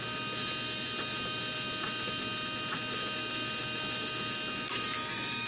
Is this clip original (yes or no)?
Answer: yes